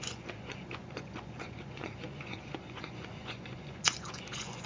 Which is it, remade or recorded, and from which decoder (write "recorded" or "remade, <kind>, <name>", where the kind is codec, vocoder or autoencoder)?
remade, vocoder, Vocos